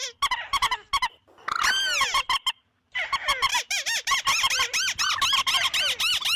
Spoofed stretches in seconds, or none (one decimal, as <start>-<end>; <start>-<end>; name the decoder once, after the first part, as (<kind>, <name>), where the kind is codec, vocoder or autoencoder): none